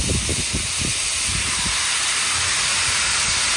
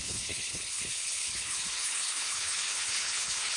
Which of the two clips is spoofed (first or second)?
second